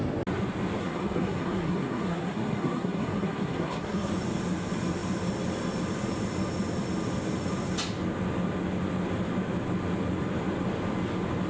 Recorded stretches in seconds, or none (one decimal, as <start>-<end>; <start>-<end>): 0.0-0.8; 4.1-11.5

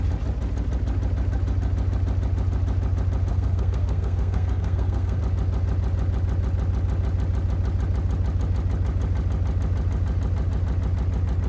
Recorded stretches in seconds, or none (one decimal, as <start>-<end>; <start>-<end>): 0.0-3.3; 5.2-11.5

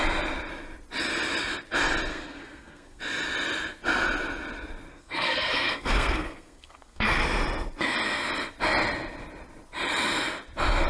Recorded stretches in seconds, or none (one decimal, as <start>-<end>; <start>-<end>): 0.0-2.1; 3.0-4.9; 7.2-10.9

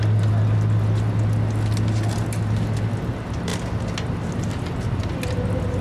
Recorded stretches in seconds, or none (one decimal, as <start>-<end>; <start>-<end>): 0.0-5.8

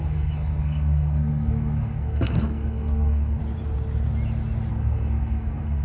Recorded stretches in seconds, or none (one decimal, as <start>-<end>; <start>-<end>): 3.4-4.7

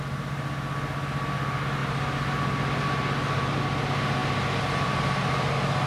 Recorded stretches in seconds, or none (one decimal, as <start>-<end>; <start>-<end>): 0.0-5.9